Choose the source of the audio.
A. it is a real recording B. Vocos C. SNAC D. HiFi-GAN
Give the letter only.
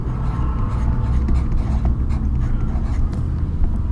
A